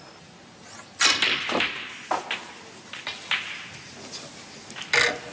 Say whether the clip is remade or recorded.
recorded